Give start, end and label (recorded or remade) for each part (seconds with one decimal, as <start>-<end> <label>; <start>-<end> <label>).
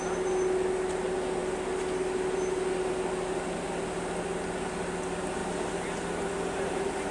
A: 0.0-7.1 recorded